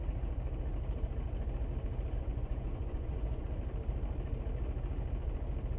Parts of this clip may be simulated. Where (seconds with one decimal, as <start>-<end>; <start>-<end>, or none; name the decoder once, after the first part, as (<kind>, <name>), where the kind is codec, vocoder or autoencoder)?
2.3-3.4 (vocoder, Vocos)